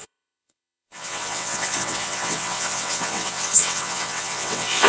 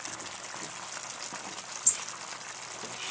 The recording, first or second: second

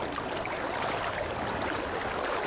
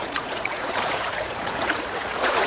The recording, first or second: first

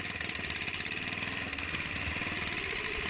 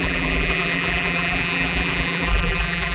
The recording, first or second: first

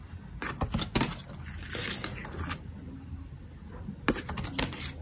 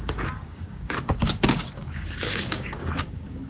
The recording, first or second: first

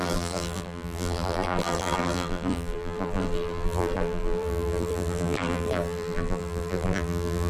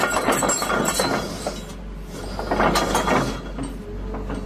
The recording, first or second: second